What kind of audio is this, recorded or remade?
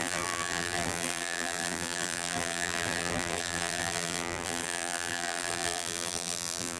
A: remade